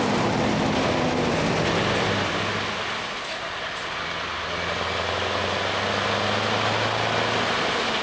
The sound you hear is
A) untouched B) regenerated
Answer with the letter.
A